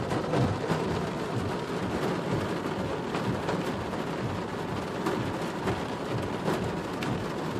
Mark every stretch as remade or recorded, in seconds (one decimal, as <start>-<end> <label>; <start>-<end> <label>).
0.0-7.6 recorded